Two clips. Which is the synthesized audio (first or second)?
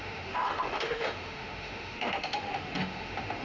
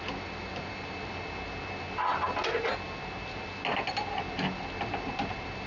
first